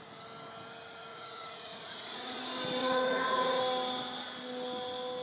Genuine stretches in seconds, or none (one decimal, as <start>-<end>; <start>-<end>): 0.0-1.1; 2.4-2.8; 3.6-5.2